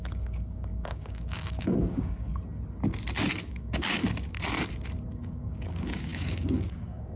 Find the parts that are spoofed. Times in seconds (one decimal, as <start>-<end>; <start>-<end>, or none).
0.0-2.3; 3.5-4.0; 5.1-7.2

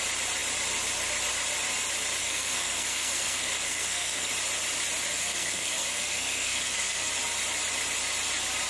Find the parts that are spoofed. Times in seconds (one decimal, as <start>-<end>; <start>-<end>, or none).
2.2-4.3; 5.1-7.1

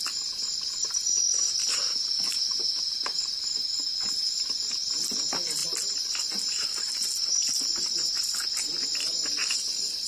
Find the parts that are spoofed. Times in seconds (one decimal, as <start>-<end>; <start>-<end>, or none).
1.4-3.5